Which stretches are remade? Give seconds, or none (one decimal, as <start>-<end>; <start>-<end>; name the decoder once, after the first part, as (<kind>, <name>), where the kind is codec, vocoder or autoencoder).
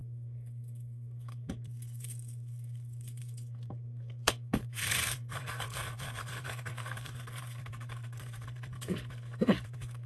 0.0-10.1 (codec, SNAC)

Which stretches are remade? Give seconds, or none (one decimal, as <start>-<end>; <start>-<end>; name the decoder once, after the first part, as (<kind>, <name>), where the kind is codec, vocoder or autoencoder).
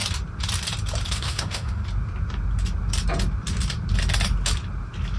1.1-1.8 (autoencoder, DAC-VAE)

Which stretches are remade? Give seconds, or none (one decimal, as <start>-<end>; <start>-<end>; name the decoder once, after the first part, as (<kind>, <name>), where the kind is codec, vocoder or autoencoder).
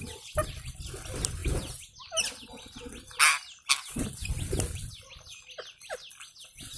none